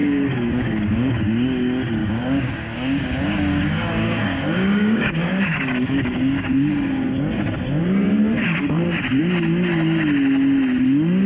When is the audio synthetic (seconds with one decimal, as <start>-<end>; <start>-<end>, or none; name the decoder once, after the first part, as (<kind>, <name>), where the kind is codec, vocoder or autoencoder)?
0.0-1.1 (codec, DAC); 2.0-6.5